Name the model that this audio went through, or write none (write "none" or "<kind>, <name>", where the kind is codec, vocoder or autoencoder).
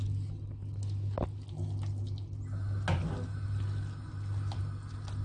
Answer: none